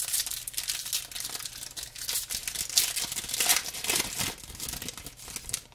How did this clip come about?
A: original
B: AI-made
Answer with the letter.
A